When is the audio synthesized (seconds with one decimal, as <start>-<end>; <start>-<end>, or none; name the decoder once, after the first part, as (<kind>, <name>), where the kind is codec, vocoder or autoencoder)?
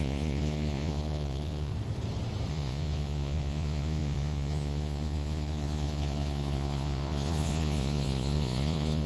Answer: 0.0-1.7 (vocoder, Vocos); 2.5-9.1